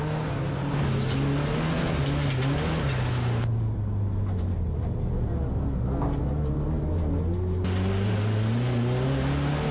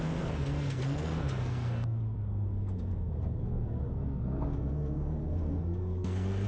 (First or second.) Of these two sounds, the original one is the first